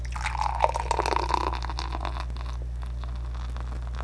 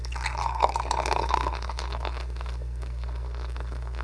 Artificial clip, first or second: second